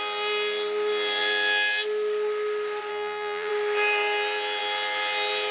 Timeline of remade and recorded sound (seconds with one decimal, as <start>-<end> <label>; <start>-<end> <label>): 0.0-2.9 recorded; 2.9-3.5 remade; 3.5-5.5 recorded